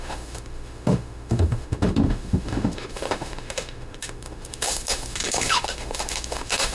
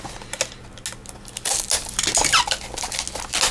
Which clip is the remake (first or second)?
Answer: first